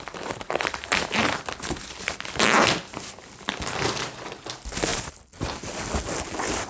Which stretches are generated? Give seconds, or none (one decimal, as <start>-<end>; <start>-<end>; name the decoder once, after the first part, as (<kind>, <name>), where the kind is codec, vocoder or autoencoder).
none